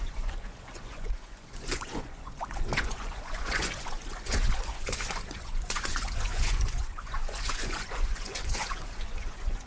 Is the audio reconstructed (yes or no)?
yes